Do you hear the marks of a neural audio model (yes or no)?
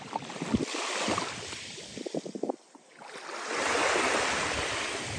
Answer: no